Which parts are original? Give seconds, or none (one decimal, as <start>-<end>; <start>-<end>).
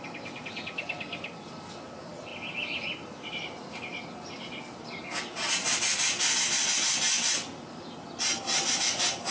0.0-9.3